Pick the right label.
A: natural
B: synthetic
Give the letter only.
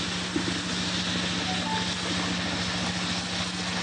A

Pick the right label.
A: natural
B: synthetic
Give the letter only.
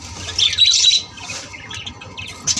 A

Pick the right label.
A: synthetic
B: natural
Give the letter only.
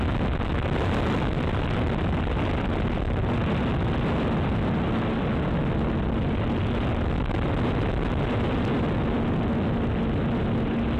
B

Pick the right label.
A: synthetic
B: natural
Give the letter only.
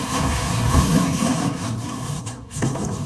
A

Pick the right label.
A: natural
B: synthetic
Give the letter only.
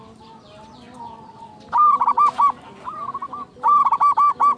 A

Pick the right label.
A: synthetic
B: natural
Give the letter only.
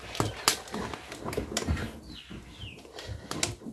B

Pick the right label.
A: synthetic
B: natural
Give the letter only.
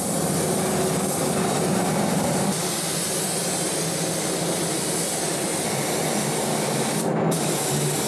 B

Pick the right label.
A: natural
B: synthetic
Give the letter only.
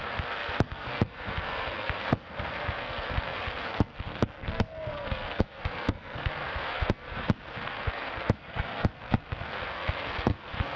B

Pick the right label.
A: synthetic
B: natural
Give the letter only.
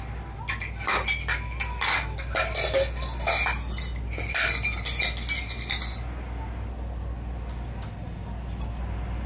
B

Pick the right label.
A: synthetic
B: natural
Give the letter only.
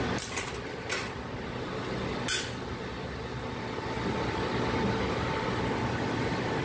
B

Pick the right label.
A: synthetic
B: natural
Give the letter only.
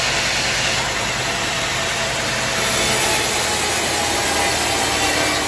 B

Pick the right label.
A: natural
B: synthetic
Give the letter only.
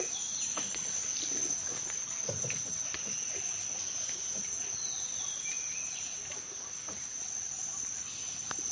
A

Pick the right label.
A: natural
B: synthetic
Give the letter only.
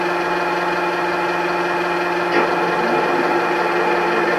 A